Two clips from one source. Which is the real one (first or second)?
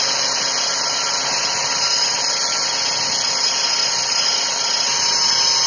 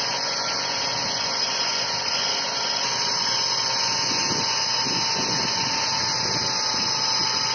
first